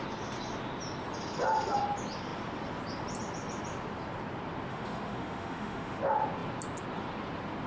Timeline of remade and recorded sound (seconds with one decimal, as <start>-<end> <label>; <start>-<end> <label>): 0.0-4.7 recorded; 4.7-6.0 remade; 6.0-7.7 recorded